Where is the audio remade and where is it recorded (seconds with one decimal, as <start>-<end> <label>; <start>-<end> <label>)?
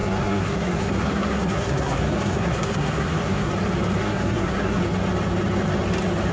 0.0-3.5 remade; 3.5-4.0 recorded; 4.0-4.8 remade; 4.8-6.3 recorded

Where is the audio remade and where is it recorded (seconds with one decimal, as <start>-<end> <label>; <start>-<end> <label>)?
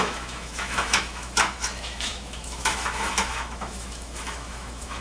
0.0-5.0 remade